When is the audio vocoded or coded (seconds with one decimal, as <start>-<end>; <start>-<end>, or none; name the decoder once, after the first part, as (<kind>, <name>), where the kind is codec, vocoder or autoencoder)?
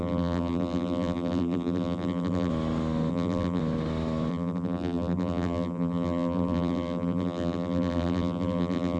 0.0-2.5 (vocoder, BigVGAN v2); 3.1-3.6; 4.3-9.0